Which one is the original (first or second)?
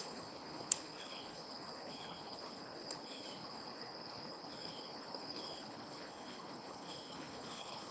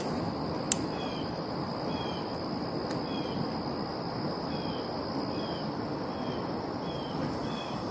second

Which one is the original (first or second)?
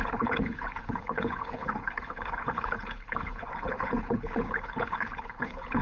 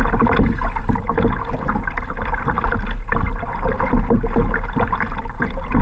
second